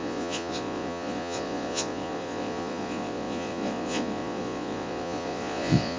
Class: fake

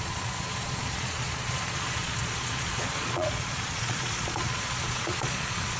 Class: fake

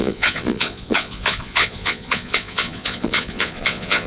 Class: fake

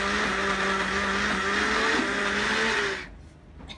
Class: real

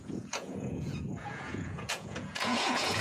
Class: fake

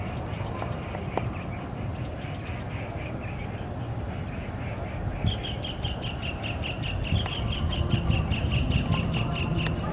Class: real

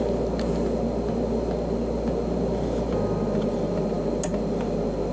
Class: real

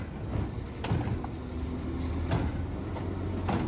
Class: real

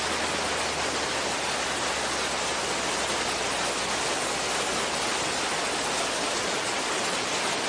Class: real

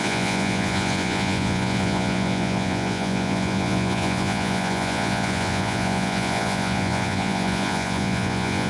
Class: fake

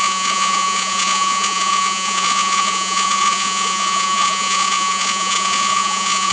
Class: fake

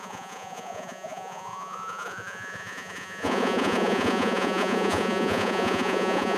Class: fake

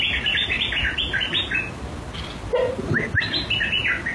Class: real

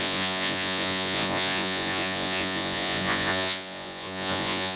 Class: fake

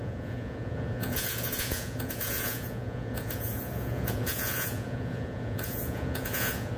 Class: fake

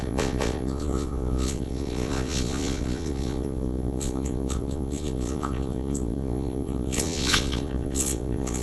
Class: fake